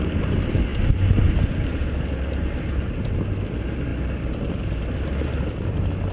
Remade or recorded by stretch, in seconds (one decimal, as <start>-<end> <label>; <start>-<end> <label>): 0.0-6.1 recorded